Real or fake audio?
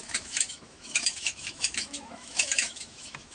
fake